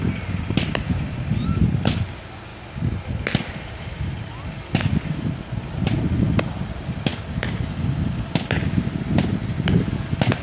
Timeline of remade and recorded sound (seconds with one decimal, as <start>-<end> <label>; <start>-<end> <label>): 0.0-10.4 recorded